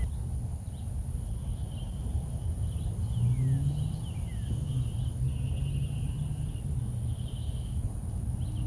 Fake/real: real